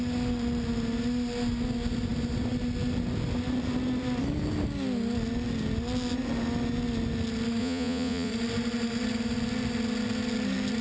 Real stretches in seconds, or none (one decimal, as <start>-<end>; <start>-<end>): 0.0-7.6; 8.3-10.8